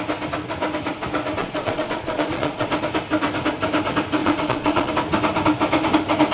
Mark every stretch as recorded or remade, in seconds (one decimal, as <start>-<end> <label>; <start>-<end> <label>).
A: 0.0-1.4 recorded; 1.4-2.7 remade; 2.7-4.2 recorded; 4.2-4.9 remade; 4.9-6.3 recorded